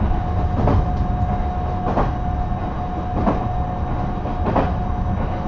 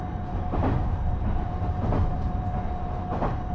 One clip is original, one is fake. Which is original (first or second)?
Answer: first